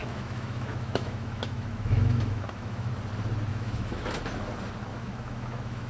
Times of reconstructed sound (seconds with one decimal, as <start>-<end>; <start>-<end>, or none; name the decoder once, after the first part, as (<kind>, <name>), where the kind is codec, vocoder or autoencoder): 0.0-2.9 (autoencoder, DAC-VAE); 3.5-4.2; 4.9-5.9